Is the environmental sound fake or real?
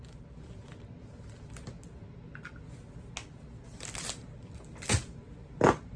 real